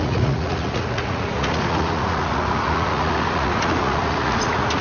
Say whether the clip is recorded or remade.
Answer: remade